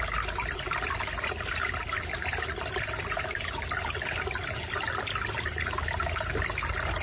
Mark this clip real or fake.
real